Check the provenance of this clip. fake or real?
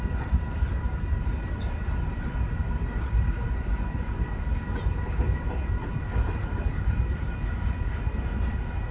real